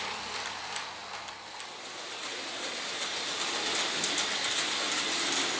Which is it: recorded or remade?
recorded